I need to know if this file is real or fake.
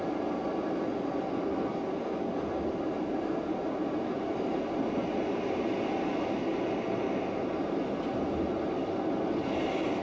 real